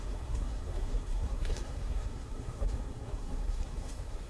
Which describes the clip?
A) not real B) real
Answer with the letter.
A